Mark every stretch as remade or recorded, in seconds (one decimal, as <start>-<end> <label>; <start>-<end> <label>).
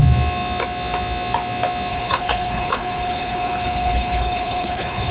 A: 0.0-1.9 recorded; 1.9-5.1 remade